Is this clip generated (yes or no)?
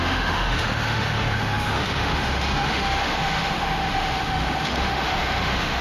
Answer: yes